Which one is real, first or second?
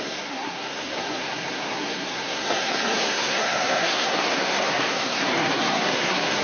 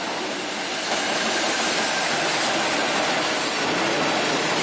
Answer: second